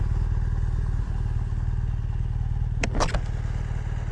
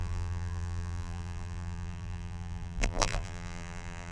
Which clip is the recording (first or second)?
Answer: first